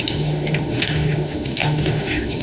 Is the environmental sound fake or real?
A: fake